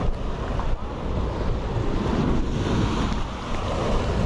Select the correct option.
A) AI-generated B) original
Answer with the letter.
B